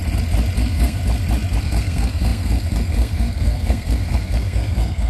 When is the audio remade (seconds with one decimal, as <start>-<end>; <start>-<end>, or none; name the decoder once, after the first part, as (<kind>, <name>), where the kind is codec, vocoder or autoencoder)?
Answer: 0.6-1.0 (codec, SNAC); 1.6-5.1